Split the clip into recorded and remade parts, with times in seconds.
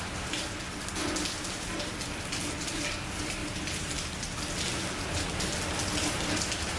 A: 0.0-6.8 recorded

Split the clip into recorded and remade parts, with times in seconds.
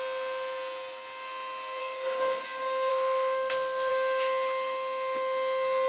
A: 0.0-1.8 recorded; 1.8-2.4 remade; 2.4-2.9 recorded; 2.9-3.9 remade; 3.9-5.9 recorded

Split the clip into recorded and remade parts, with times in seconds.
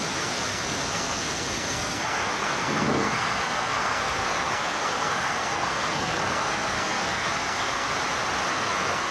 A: 0.0-7.9 remade; 7.9-8.5 recorded; 8.5-9.1 remade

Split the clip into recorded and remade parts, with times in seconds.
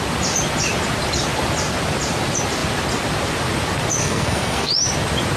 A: 0.0-4.0 recorded; 4.0-4.7 remade; 4.7-5.4 recorded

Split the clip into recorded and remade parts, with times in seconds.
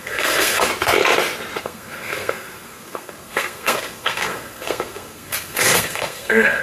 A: 0.0-0.7 remade; 0.7-1.6 recorded; 1.6-6.6 remade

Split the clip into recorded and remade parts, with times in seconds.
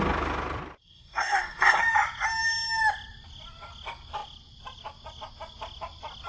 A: 0.0-0.8 recorded; 0.8-1.8 remade; 1.8-6.3 recorded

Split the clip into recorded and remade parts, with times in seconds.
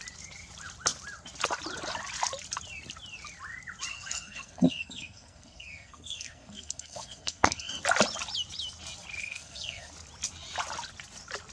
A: 0.0-3.9 recorded; 3.9-7.7 remade; 7.7-9.2 recorded; 9.2-9.9 remade; 9.9-11.5 recorded